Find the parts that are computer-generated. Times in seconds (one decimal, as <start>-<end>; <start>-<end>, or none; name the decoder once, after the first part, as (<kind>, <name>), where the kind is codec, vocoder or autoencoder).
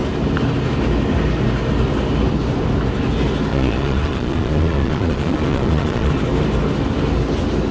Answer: 3.5-6.1 (vocoder, Vocos)